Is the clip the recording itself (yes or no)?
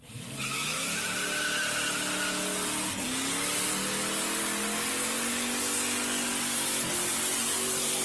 yes